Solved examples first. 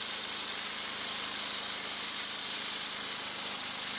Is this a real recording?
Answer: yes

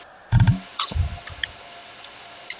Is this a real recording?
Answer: yes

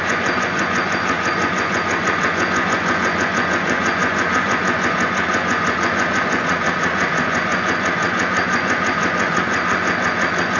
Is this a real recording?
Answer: no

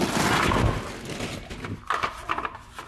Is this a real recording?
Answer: yes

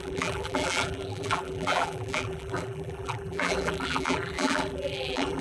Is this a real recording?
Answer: no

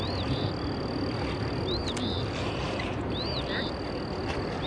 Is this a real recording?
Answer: yes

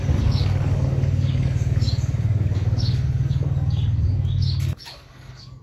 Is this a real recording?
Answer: no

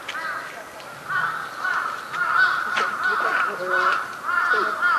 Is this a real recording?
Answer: yes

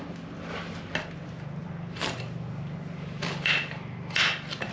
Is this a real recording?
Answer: yes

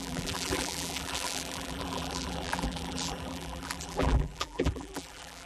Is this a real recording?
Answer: no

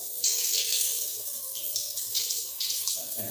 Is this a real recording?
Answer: no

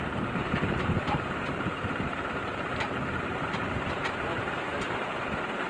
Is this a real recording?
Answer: no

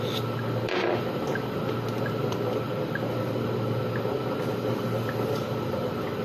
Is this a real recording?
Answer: yes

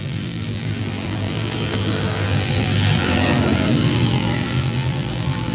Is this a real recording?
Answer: no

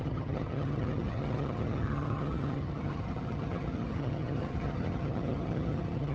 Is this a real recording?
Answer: no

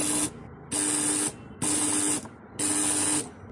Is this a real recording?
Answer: yes